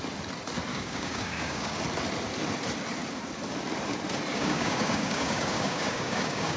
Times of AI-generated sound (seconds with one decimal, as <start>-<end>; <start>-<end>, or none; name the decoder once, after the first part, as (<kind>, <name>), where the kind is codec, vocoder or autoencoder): 0.7-1.8 (codec, DAC); 4.3-6.6